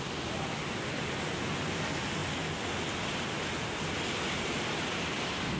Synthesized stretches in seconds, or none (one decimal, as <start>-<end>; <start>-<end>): none